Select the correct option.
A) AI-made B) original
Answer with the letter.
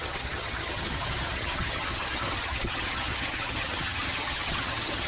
A